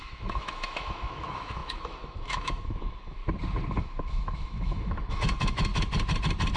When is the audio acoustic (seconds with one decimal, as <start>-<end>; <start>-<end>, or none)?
3.2-3.8; 5.7-6.6